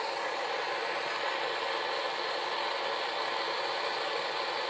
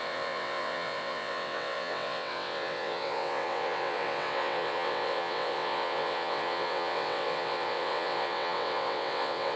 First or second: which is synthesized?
second